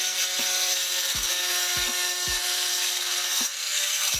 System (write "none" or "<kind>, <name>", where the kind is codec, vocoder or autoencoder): codec, SNAC